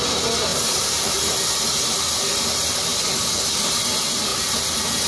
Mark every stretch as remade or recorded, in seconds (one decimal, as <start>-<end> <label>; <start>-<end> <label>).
0.0-0.5 recorded; 0.5-1.2 remade; 1.2-5.1 recorded